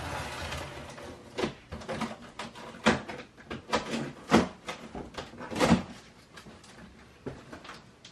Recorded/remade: recorded